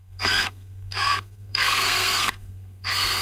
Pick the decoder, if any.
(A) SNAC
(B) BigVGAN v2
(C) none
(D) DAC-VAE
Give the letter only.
A